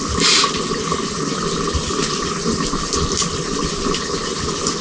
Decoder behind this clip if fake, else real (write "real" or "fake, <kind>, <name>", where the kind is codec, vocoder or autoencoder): real